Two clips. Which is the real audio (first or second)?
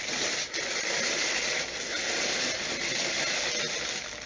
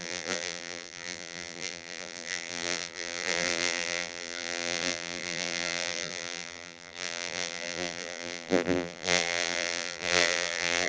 first